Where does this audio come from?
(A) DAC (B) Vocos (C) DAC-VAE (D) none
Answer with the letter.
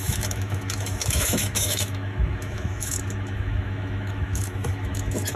C